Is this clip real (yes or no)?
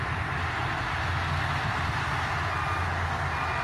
yes